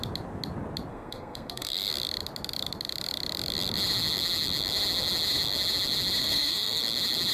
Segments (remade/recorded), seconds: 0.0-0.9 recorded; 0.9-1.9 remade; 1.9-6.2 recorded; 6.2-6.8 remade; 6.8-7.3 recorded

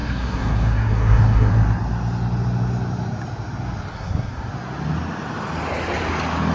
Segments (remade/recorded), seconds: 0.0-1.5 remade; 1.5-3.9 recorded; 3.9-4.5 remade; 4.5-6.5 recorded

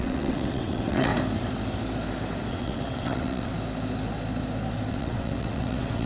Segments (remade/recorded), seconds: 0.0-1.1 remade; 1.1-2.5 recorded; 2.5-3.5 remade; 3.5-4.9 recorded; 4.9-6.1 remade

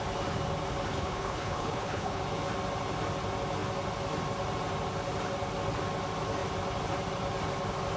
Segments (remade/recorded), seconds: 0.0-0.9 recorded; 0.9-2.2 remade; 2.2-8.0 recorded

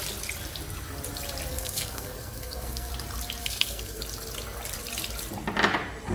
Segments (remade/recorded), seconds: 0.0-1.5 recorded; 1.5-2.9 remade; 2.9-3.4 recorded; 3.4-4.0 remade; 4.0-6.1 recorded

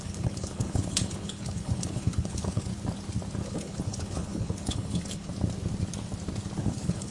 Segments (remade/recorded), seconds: 0.0-2.7 remade; 2.7-3.4 recorded; 3.4-5.3 remade; 5.3-6.6 recorded; 6.6-7.1 remade